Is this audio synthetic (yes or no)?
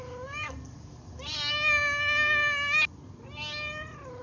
no